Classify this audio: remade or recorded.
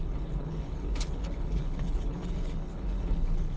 remade